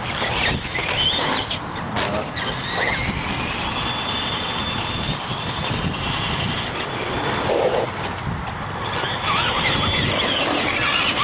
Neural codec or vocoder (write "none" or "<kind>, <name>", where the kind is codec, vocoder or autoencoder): none